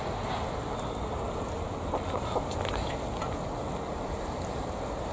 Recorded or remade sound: recorded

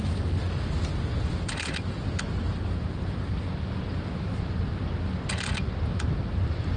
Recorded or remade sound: recorded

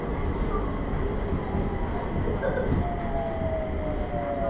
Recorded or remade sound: recorded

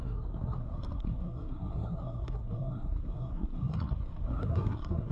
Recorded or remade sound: remade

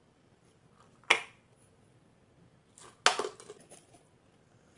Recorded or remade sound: recorded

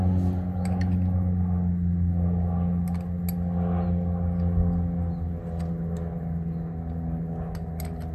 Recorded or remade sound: recorded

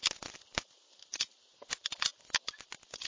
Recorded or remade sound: recorded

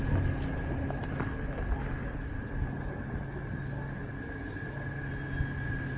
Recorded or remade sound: recorded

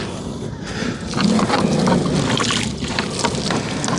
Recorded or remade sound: recorded